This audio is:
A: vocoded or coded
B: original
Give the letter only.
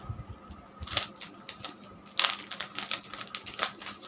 B